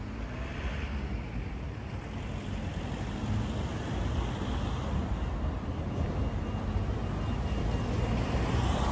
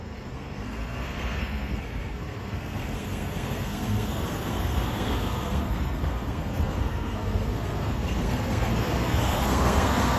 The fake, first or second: second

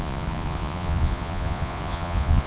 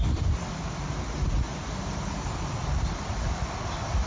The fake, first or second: first